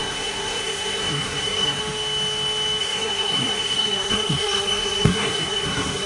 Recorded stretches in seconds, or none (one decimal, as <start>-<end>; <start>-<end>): 1.8-2.8